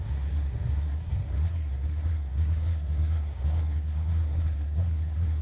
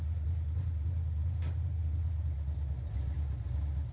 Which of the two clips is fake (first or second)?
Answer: first